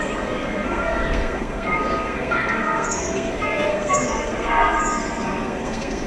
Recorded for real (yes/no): no